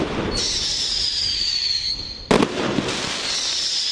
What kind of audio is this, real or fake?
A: fake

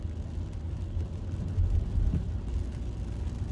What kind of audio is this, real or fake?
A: real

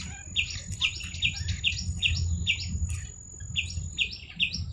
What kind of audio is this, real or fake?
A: real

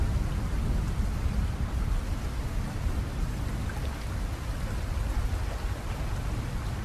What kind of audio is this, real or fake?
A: real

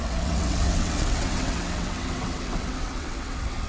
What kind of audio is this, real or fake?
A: fake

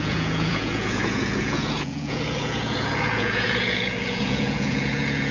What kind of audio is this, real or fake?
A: fake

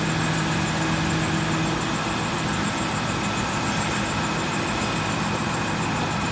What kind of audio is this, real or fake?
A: real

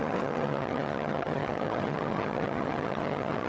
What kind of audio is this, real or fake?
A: fake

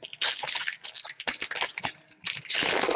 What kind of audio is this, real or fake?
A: real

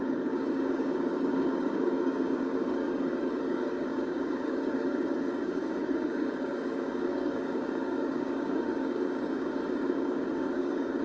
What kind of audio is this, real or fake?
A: fake